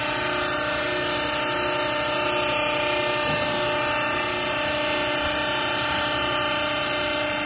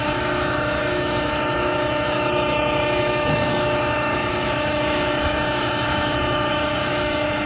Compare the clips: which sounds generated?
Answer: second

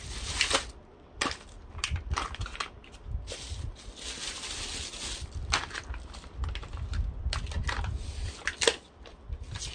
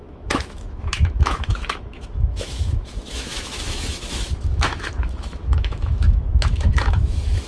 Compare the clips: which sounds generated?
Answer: second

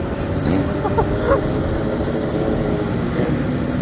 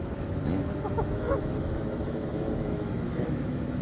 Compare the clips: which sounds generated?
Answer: second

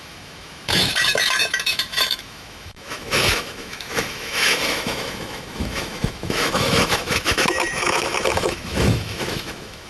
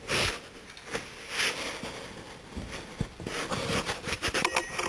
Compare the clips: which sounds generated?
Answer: first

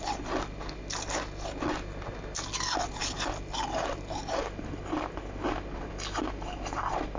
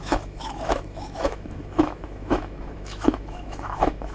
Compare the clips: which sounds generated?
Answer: second